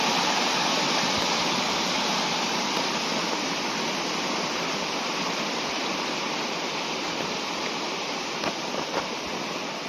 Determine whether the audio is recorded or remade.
remade